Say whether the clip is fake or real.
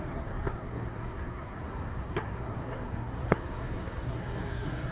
fake